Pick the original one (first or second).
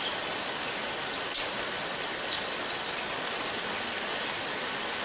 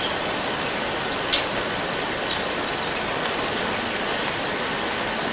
second